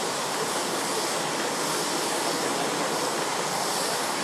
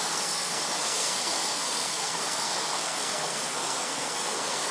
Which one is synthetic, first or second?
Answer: second